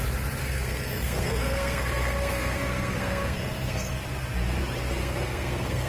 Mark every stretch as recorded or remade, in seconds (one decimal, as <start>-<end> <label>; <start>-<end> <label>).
0.0-0.4 recorded; 0.4-3.9 remade; 3.9-5.0 recorded; 5.0-5.9 remade